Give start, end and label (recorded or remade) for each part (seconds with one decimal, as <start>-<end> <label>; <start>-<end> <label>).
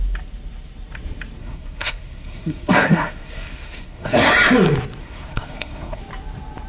0.0-1.4 recorded; 1.4-4.3 remade; 4.3-5.0 recorded; 5.0-6.0 remade; 6.0-6.7 recorded